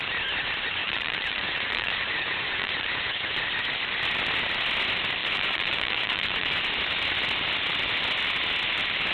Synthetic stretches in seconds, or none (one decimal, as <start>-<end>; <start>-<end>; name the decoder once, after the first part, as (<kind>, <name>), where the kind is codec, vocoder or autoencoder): 0.8-3.4 (vocoder, Vocos); 5.2-6.6